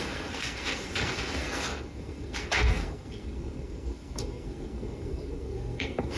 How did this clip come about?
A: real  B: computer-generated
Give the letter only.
B